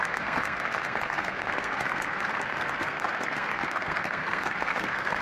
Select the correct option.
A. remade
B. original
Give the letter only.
A